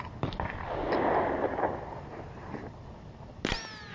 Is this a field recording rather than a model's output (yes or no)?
yes